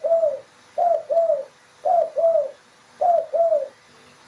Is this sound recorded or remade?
recorded